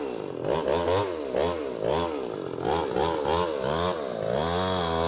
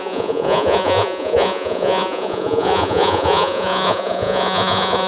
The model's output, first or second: second